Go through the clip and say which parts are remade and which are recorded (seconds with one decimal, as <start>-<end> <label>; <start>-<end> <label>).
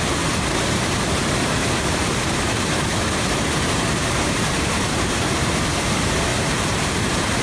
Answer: 0.0-1.6 recorded; 1.6-5.3 remade; 5.3-7.4 recorded